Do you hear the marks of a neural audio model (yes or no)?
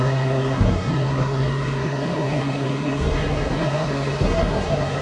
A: yes